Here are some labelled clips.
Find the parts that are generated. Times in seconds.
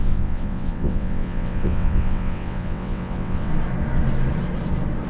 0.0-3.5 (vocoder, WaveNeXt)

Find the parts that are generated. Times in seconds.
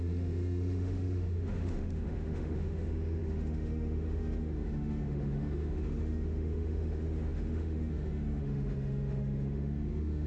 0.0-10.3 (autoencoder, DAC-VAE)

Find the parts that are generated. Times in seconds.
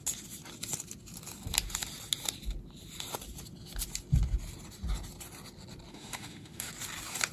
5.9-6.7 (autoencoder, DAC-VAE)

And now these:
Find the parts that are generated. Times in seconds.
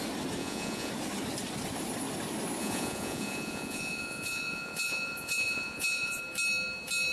0.4-0.9 (vocoder, Vocos); 2.6-6.2